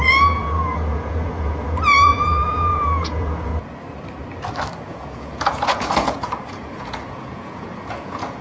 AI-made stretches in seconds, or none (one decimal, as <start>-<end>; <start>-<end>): 0.0-3.5; 4.8-8.4

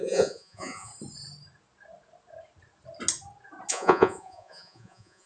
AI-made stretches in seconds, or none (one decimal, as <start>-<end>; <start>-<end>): 0.0-0.9; 3.7-5.3

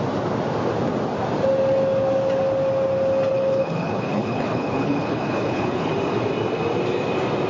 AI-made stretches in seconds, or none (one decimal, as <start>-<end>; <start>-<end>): 3.3-5.9

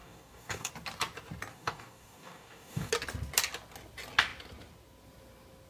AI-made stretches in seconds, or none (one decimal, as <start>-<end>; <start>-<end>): 0.0-0.7; 1.5-2.9

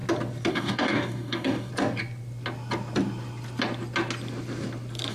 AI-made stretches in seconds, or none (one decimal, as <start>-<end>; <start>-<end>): 0.5-1.7

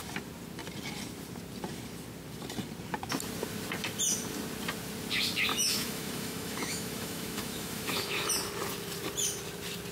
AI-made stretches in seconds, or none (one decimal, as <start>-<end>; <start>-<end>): 5.5-8.3

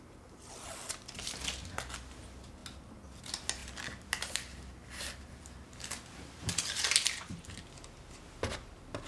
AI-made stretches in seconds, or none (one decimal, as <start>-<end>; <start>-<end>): none

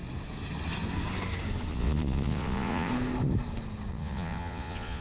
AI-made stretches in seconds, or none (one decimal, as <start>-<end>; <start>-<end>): 1.7-2.9; 3.9-5.0